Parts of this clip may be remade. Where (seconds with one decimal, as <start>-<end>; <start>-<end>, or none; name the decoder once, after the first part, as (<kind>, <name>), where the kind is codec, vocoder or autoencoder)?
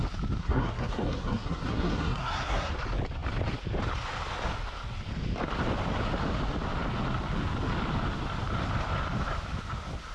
0.4-2.7 (codec, SNAC)